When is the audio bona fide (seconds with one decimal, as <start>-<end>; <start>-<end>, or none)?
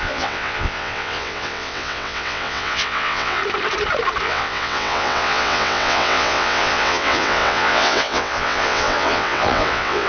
3.4-4.2